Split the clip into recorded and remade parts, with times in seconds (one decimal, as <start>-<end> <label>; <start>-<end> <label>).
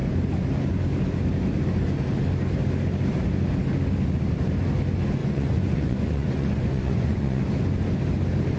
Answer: 0.0-5.2 recorded; 5.2-7.4 remade; 7.4-8.6 recorded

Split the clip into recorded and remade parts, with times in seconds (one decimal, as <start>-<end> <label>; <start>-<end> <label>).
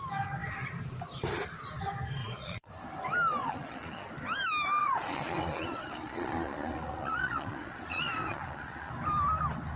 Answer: 0.0-2.2 recorded; 2.2-2.7 remade; 2.7-3.4 recorded; 3.4-4.1 remade; 4.1-4.8 recorded; 4.8-8.9 remade; 8.9-9.8 recorded